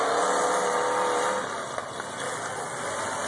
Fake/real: real